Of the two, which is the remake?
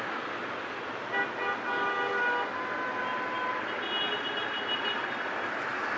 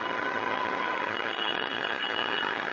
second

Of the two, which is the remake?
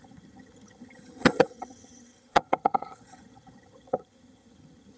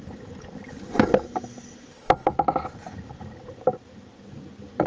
first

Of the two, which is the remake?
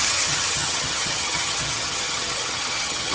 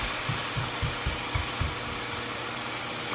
first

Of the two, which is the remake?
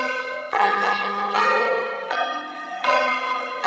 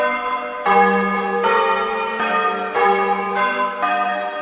first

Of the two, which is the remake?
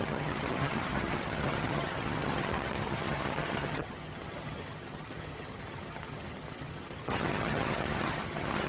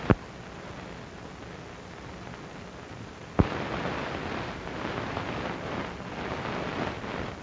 first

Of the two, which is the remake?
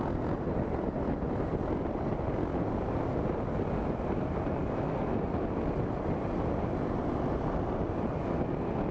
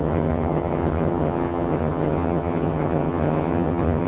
second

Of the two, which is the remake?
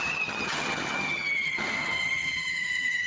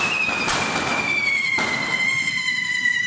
first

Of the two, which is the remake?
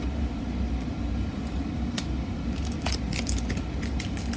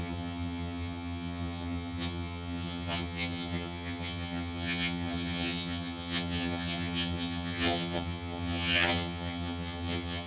second